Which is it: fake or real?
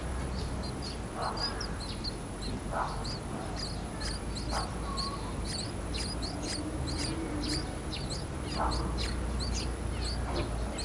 real